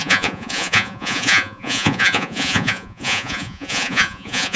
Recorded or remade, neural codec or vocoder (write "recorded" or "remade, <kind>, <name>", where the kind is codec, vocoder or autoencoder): remade, vocoder, Vocos